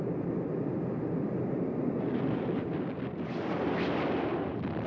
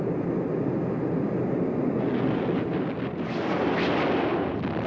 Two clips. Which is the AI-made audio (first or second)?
first